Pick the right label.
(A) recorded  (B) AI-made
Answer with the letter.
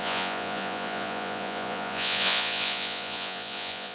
B